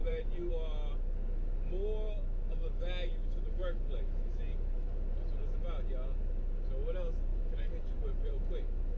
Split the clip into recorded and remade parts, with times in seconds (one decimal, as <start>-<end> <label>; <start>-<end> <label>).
0.0-0.5 remade; 0.5-7.3 recorded; 7.3-8.4 remade; 8.4-9.0 recorded